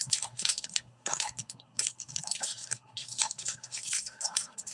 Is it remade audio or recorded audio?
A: remade